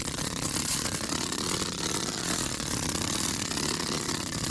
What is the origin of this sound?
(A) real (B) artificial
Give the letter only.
B